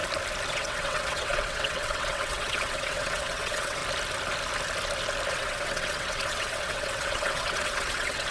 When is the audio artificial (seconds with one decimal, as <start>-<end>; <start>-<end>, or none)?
0.5-3.8; 5.3-8.3